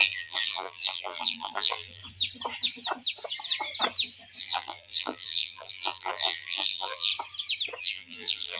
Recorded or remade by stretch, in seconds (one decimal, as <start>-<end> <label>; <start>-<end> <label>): 0.0-2.0 remade; 2.0-4.4 recorded; 4.4-7.1 remade; 7.1-7.8 recorded; 7.8-8.6 remade

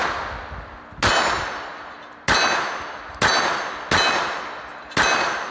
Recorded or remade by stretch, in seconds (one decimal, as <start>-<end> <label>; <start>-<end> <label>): 0.0-5.5 recorded

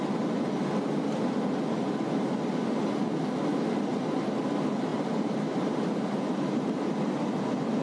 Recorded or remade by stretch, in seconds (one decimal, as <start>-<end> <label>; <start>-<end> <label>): 0.0-4.9 recorded; 4.9-6.8 remade; 6.8-7.8 recorded

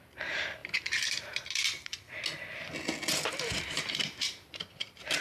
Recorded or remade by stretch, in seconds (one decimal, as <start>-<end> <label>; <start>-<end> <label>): 0.0-1.9 remade; 1.9-3.6 recorded; 3.6-5.2 remade

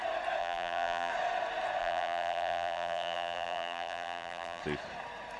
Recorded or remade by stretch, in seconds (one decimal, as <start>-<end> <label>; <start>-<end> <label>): 0.0-0.4 recorded; 0.4-1.1 remade; 1.1-1.8 recorded; 1.8-4.6 remade; 4.6-5.4 recorded